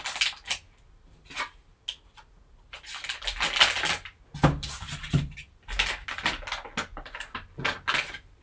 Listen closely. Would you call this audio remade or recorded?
recorded